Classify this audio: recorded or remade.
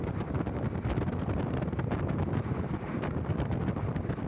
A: recorded